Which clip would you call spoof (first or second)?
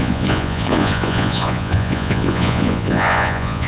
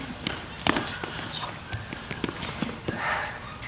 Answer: first